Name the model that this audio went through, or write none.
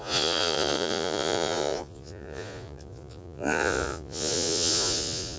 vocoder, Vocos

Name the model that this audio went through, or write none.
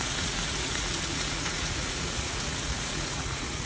vocoder, Vocos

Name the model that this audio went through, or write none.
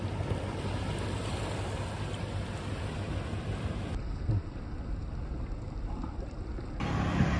none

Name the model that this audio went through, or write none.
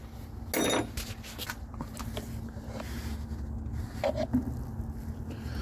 none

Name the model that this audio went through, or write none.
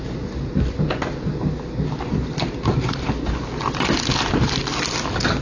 none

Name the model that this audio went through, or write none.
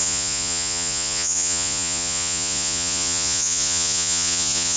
vocoder, Vocos